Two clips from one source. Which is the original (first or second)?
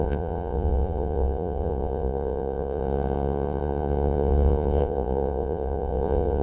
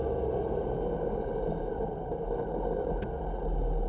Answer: second